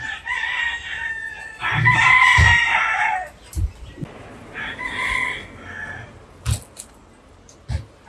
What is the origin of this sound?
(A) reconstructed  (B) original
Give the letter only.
B